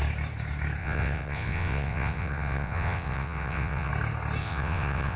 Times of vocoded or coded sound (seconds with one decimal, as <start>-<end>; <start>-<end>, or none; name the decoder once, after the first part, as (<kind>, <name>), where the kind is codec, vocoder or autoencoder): 0.8-3.9 (vocoder, WaveNeXt); 4.4-5.2